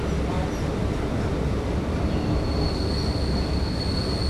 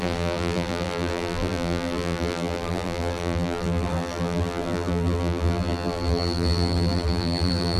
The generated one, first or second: second